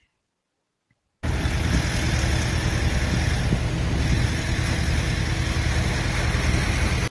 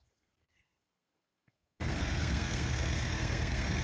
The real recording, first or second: first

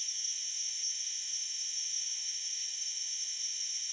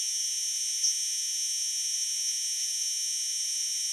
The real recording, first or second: second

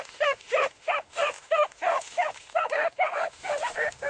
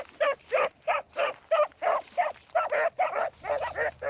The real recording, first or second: second